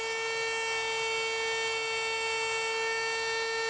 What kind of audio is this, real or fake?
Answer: real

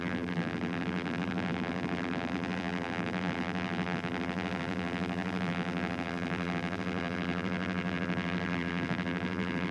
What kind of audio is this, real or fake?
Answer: fake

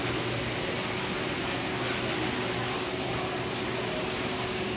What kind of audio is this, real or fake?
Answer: real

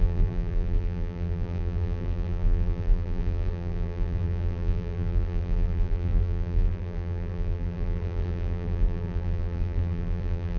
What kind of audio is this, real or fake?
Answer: fake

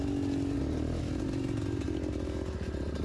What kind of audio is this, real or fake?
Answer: real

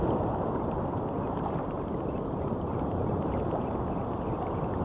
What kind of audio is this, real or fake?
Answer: fake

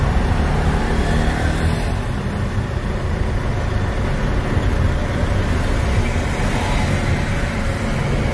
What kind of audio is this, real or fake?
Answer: real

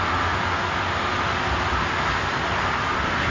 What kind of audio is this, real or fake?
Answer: real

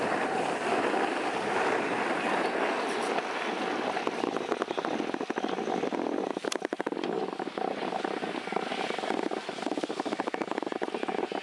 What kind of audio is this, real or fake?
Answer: real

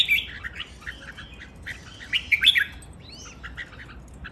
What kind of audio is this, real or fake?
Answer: real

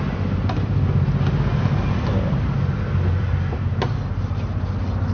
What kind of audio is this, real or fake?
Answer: real